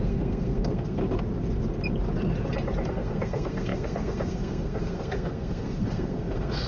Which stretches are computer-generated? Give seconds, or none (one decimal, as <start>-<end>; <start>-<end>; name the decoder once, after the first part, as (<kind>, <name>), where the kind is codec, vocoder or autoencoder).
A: 0.0-1.0 (codec, SNAC); 2.9-6.7